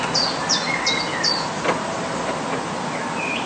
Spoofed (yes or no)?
no